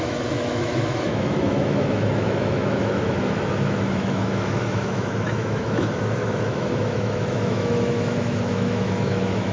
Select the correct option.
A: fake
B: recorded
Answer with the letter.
A